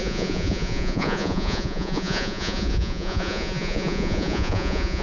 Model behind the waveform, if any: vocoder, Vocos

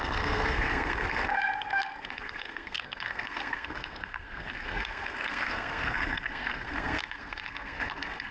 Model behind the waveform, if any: codec, SNAC